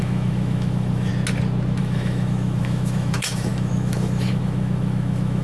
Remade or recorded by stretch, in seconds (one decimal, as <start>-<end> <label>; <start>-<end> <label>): 0.0-1.1 remade; 1.1-1.8 recorded; 1.8-5.4 remade